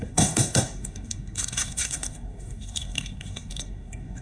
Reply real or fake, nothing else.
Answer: fake